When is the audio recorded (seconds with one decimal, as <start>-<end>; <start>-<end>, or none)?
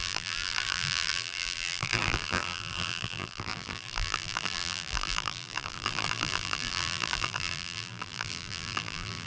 none